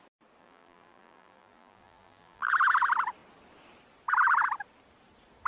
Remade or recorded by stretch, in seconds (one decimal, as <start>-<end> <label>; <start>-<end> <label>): 0.0-0.4 recorded; 0.4-2.5 remade; 2.5-5.5 recorded